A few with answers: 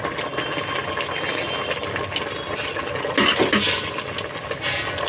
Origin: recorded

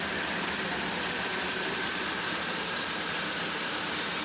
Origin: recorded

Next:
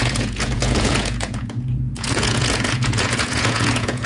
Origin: remade